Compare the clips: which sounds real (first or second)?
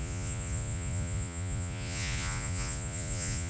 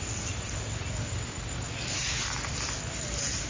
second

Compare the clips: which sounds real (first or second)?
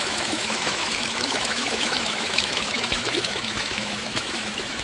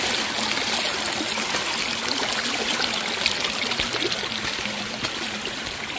second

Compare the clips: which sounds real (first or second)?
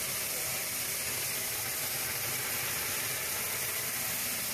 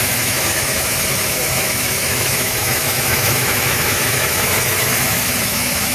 first